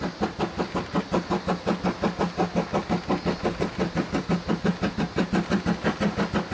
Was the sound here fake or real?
real